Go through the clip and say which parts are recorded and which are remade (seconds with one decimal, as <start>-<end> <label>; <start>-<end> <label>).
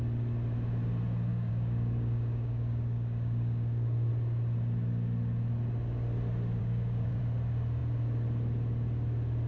0.0-1.3 recorded; 1.3-4.1 remade; 4.1-6.6 recorded; 6.6-7.2 remade; 7.2-9.5 recorded